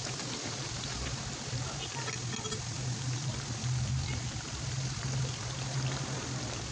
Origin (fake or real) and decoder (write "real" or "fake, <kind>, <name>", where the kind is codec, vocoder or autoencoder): real